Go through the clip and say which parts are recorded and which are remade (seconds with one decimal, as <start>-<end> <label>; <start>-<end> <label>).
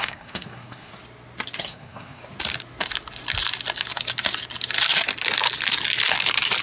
0.0-0.9 remade; 0.9-1.6 recorded; 1.6-2.2 remade; 2.2-6.6 recorded